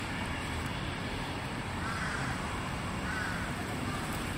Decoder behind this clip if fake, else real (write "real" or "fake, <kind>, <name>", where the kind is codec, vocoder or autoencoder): fake, vocoder, BigVGAN v2